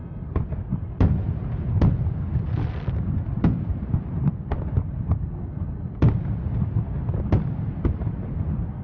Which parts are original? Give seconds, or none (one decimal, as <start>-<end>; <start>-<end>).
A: 0.0-8.8